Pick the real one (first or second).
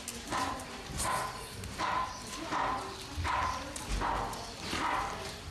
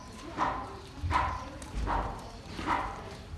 first